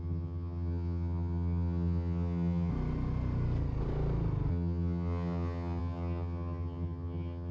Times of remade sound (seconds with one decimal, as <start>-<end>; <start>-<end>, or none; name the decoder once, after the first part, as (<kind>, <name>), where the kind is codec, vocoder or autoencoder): 0.0-2.7 (vocoder, HiFi-GAN); 4.5-7.5